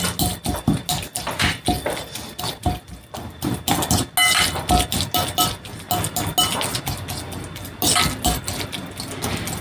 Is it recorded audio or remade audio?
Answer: recorded